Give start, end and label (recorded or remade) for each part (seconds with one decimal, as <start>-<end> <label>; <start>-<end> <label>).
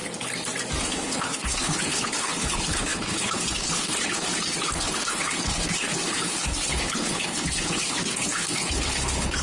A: 0.0-0.8 recorded; 0.8-9.4 remade